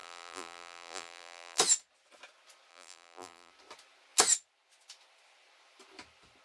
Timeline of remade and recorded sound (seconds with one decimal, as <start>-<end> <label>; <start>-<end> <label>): 0.0-1.6 remade; 1.6-2.7 recorded; 2.7-3.5 remade; 3.5-6.4 recorded